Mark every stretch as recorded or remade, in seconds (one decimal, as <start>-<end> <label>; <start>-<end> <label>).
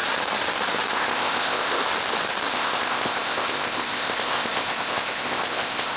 0.0-0.9 recorded; 0.9-1.8 remade; 1.8-2.5 recorded; 2.5-6.0 remade